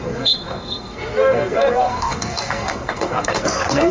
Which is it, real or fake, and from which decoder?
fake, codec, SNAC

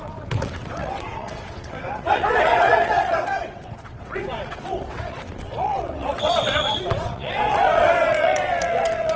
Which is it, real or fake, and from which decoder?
fake, vocoder, WaveNeXt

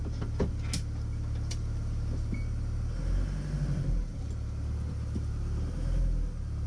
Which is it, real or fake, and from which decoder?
real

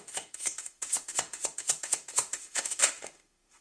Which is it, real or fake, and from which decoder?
fake, autoencoder, DAC-VAE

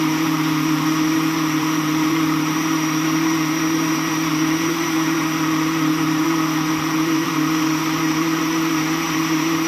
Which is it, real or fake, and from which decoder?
fake, vocoder, BigVGAN v2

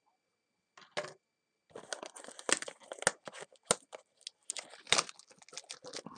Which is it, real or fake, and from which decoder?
real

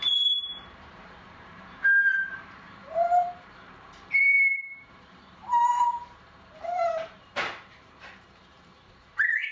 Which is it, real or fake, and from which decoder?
fake, vocoder, BigVGAN v2